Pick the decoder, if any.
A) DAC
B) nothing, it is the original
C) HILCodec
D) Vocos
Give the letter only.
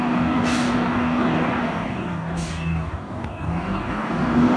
A